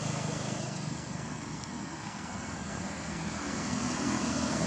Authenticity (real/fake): fake